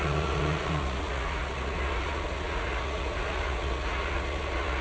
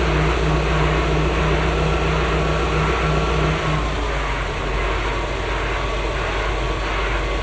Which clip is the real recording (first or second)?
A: second